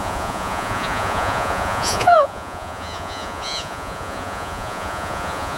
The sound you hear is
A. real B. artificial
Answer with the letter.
B